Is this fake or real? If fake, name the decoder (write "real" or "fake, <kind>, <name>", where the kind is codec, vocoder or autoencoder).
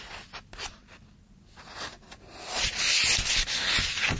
real